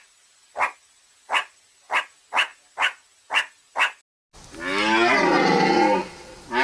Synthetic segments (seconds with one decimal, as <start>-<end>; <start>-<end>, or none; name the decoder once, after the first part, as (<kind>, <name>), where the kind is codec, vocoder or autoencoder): none